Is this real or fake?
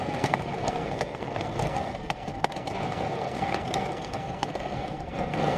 fake